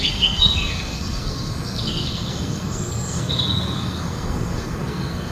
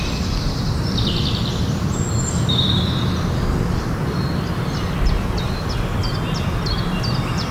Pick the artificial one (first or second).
first